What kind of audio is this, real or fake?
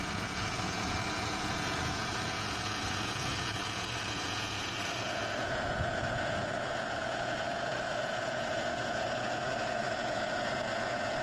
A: fake